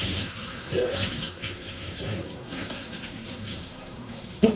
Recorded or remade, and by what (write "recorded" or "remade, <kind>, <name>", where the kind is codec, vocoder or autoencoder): remade, codec, SNAC